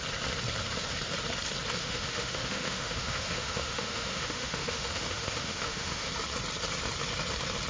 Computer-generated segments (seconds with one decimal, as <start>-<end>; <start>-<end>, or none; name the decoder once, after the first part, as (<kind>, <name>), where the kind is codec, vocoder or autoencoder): 1.8-6.1 (autoencoder, DAC-VAE)